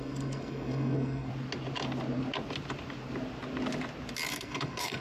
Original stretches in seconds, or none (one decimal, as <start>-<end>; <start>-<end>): 1.3-4.3